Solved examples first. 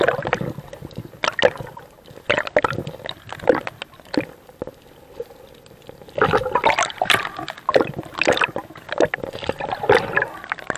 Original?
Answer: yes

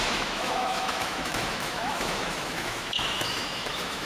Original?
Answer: no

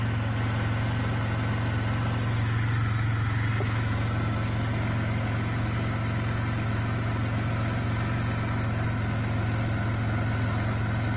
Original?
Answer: yes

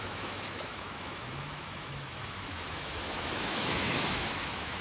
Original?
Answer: no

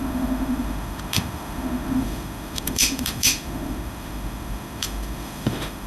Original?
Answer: no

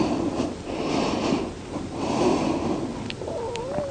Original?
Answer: yes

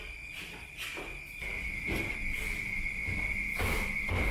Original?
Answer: yes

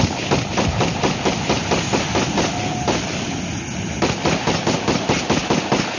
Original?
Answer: yes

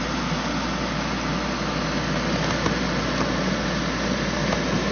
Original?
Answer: yes